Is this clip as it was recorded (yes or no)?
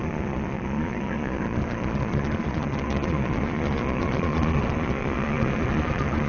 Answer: no